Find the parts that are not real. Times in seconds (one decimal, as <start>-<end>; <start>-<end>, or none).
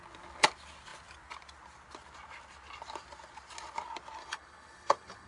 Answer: 4.2-5.3